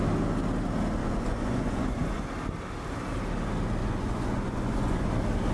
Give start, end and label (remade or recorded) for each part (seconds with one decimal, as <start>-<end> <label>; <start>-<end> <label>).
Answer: 0.0-1.0 recorded; 1.0-2.2 remade; 2.2-3.8 recorded; 3.8-5.1 remade; 5.1-5.5 recorded

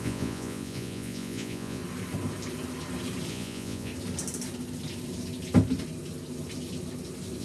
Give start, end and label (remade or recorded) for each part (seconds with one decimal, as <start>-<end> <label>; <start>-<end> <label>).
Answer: 0.0-1.8 remade; 1.8-3.3 recorded; 3.3-3.9 remade; 3.9-7.4 recorded

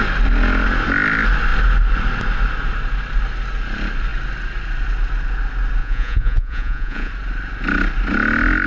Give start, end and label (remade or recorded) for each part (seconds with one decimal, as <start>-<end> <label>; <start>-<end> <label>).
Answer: 0.0-5.8 recorded; 5.8-7.1 remade; 7.1-8.7 recorded

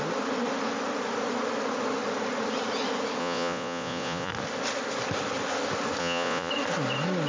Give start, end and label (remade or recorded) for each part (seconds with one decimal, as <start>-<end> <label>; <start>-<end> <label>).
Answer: 0.0-3.2 recorded; 3.2-4.3 remade; 4.3-6.0 recorded; 6.0-6.5 remade; 6.5-7.3 recorded